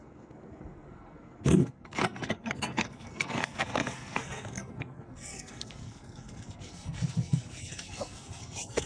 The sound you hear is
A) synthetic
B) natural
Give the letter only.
A